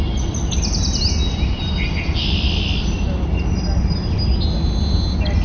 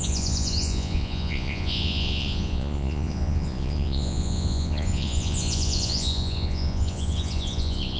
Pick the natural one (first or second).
first